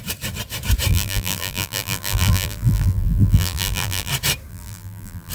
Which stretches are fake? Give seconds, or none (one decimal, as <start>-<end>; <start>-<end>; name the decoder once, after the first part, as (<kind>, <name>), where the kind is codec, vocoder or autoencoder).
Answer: 0.9-4.1 (vocoder, BigVGAN v2); 4.5-5.3